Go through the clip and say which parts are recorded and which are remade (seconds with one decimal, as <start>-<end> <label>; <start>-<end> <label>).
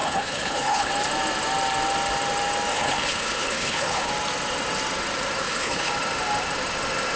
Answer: 0.0-0.9 remade; 0.9-2.7 recorded; 2.7-4.1 remade; 4.1-5.4 recorded; 5.4-5.9 remade; 5.9-7.2 recorded